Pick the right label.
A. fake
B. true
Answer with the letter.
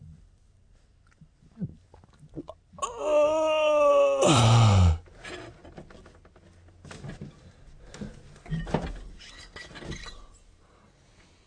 B